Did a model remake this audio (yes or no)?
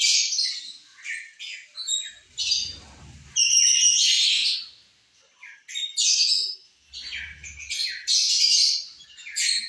no